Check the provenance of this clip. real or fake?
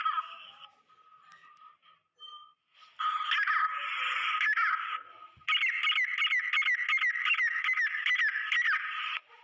real